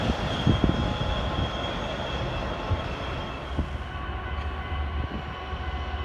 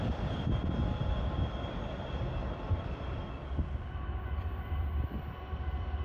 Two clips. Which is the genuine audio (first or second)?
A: first